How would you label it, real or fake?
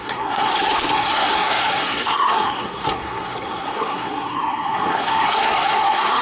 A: fake